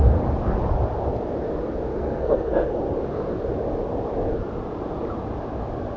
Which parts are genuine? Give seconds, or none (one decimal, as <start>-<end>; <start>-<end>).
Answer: 0.0-1.9; 2.8-6.0